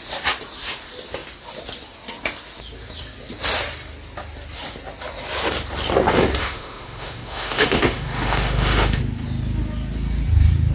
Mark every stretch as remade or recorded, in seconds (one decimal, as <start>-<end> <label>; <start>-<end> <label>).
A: 0.0-6.4 recorded; 6.4-9.0 remade; 9.0-10.7 recorded